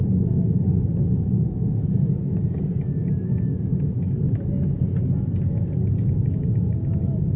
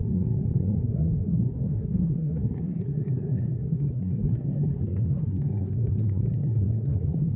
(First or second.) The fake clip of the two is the second